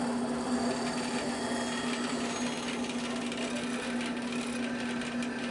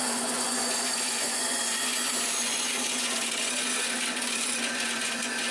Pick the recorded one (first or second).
first